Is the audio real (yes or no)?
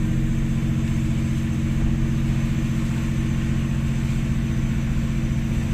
yes